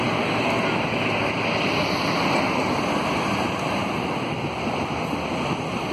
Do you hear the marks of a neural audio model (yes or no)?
no